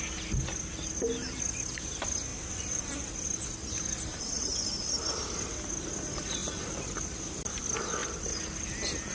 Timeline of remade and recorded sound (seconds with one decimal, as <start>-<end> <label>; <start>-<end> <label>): 0.0-2.3 recorded; 2.3-3.1 remade; 3.1-4.1 recorded; 4.1-5.0 remade; 5.0-6.4 recorded; 6.4-7.6 remade; 7.6-9.1 recorded